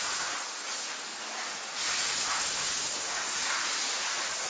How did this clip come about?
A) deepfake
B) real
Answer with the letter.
A